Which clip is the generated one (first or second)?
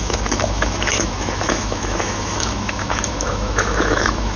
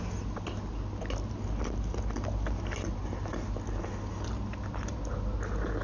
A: first